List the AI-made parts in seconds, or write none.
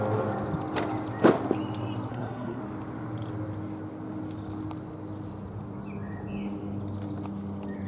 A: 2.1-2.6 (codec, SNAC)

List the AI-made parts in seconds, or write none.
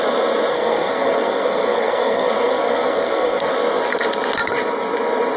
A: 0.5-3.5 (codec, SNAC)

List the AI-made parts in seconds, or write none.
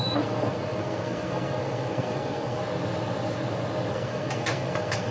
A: 0.0-2.6 (codec, SNAC); 3.9-5.1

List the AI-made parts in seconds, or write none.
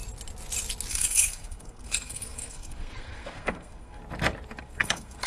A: 0.9-4.0 (codec, SNAC); 4.6-5.3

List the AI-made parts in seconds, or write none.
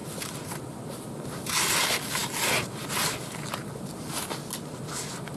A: none